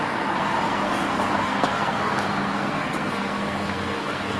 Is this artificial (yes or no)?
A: yes